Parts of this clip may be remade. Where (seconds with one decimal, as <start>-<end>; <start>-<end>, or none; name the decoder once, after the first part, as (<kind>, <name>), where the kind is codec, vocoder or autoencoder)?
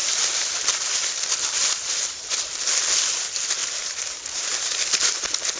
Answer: 0.0-2.3 (vocoder, BigVGAN v2); 3.6-4.7